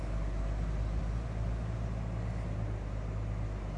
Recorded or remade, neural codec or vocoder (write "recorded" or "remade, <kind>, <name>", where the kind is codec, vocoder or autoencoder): recorded